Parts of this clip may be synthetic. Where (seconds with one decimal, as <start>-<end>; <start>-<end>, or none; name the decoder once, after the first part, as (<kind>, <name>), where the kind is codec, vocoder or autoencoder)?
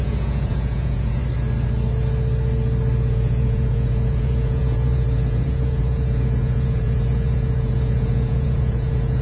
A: 0.0-1.2 (vocoder, Vocos); 3.1-9.2